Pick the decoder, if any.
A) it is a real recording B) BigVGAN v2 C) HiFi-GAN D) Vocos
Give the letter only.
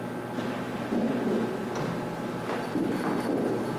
A